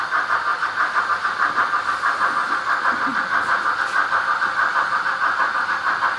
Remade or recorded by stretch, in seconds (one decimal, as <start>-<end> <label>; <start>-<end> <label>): 0.0-0.5 recorded; 0.5-1.0 remade; 1.0-4.7 recorded; 4.7-5.4 remade; 5.4-6.2 recorded